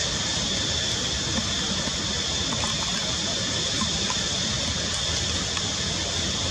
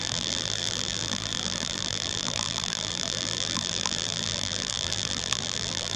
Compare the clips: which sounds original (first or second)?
first